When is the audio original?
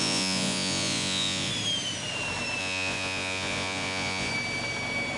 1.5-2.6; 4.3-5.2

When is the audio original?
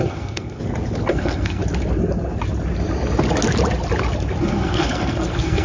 0.6-1.1; 1.6-4.4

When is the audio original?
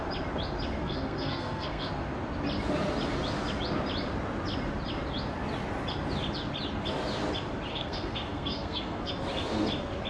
0.0-0.8; 1.9-7.7; 9.1-10.1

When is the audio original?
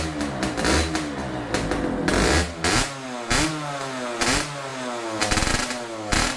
0.0-6.4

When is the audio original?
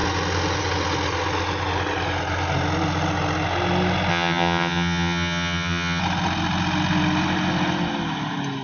0.0-4.1; 6.0-8.6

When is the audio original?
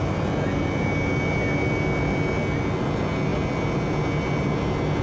0.0-5.0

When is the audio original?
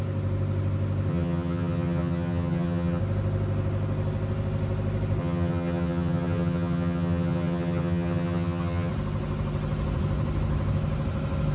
0.0-1.1; 3.0-5.2; 8.9-11.5